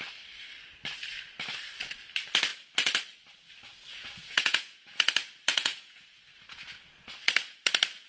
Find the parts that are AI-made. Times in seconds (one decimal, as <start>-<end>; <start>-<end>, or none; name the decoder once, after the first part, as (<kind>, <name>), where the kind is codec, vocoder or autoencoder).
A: 3.9-5.1 (vocoder, Vocos); 5.5-6.2